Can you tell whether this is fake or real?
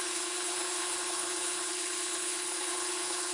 fake